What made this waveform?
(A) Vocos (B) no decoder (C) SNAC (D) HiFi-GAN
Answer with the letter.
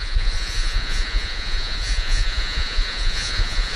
A